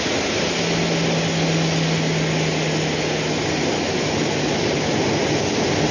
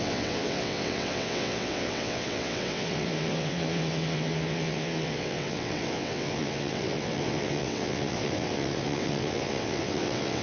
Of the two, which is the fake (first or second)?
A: second